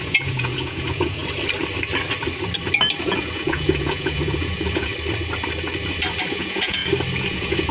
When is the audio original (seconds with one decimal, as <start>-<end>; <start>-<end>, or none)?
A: 1.2-3.0; 4.9-6.3; 6.8-7.3